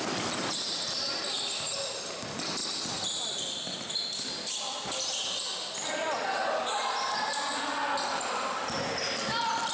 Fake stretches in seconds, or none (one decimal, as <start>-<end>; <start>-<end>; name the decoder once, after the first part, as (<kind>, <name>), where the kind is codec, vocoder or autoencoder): none